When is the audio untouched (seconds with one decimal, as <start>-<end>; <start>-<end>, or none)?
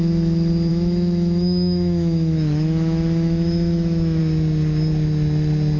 0.0-0.7; 4.2-5.8